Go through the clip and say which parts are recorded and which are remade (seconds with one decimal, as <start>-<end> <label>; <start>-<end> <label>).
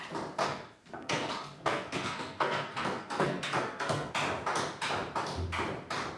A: 0.0-0.4 recorded; 0.4-4.1 remade; 4.1-6.2 recorded